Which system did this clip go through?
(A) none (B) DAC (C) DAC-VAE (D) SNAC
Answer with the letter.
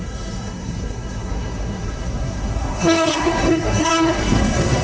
D